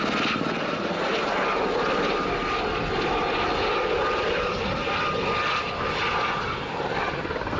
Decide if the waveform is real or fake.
real